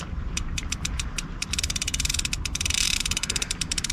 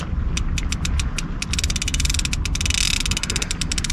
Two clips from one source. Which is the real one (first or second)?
second